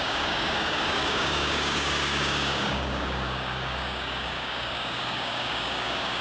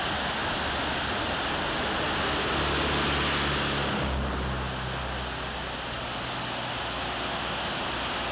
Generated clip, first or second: first